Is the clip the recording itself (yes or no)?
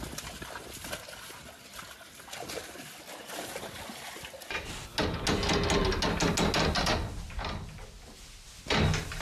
yes